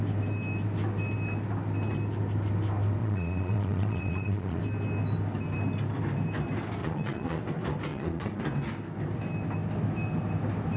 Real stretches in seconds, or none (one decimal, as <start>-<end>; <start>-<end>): 0.0-3.0; 4.6-6.8; 7.4-7.9; 8.4-10.8